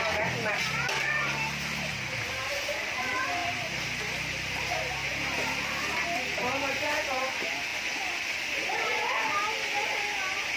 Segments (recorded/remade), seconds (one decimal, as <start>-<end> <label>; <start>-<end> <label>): 0.0-10.6 recorded